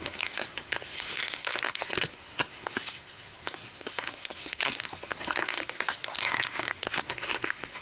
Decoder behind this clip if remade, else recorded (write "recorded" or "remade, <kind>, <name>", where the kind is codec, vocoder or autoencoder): remade, codec, SNAC